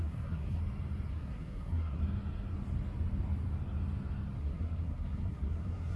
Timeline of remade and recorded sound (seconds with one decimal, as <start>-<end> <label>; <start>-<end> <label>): 0.0-0.6 remade; 0.6-1.1 recorded; 1.1-2.0 remade; 2.0-4.4 recorded; 4.4-6.0 remade

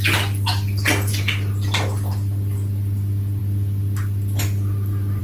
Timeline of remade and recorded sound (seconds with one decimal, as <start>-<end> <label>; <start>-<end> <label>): 0.0-5.2 recorded

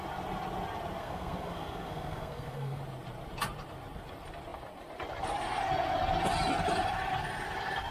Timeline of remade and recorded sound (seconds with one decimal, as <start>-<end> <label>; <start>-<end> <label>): 0.0-1.0 recorded; 1.0-2.8 remade; 2.8-7.9 recorded

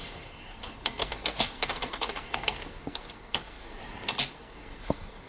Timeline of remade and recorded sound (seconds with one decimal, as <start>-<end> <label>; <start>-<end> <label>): 0.0-3.8 remade; 3.8-4.3 recorded; 4.3-5.3 remade

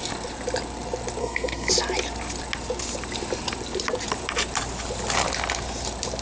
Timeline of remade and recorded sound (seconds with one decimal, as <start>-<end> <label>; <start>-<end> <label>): 0.0-1.2 recorded; 1.2-1.7 remade; 1.7-6.2 recorded